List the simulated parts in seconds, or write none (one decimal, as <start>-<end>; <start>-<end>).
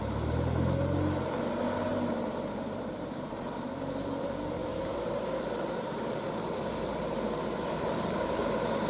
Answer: 1.9-3.3; 4.6-8.5